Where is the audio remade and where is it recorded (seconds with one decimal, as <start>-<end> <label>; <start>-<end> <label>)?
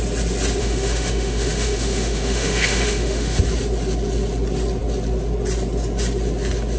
0.0-0.6 recorded; 0.6-3.4 remade; 3.4-6.8 recorded